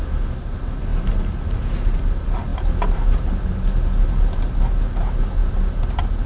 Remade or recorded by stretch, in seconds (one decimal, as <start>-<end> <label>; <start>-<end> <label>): 0.0-6.3 recorded